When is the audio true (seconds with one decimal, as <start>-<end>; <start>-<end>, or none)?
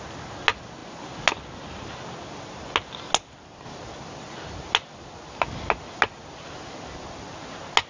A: 0.0-7.9